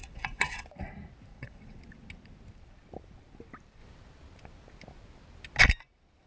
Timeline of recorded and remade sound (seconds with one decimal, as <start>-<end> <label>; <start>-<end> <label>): 0.0-0.6 remade; 0.6-1.3 recorded; 1.3-1.8 remade; 1.8-6.3 recorded